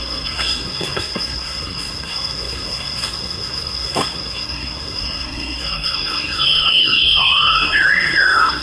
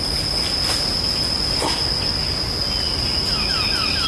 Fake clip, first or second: first